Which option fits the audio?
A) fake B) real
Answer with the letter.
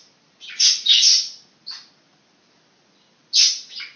B